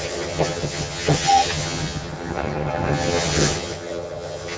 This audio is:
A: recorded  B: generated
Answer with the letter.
B